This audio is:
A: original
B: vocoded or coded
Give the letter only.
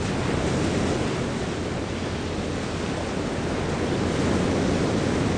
A